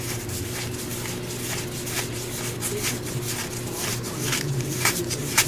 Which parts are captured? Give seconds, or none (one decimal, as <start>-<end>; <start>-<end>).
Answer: 0.9-3.9